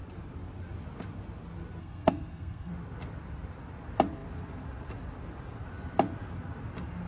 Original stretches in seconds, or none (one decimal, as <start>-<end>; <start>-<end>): 0.0-1.8; 2.7-7.1